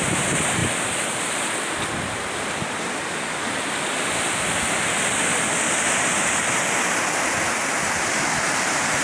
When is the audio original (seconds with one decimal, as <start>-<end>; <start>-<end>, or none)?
0.0-9.0